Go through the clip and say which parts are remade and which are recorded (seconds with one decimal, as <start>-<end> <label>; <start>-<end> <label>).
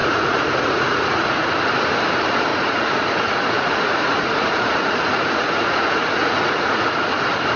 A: 0.0-1.5 remade; 1.5-2.5 recorded; 2.5-7.1 remade; 7.1-7.6 recorded